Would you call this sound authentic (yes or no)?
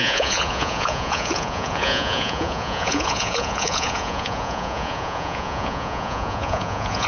no